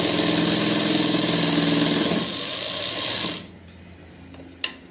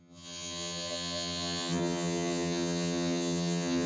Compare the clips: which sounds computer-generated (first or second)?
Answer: second